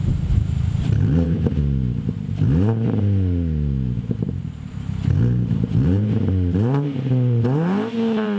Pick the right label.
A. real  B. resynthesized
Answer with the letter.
B